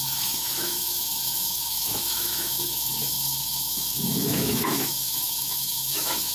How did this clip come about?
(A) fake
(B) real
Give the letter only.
A